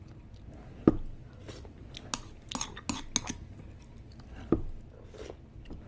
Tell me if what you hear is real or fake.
real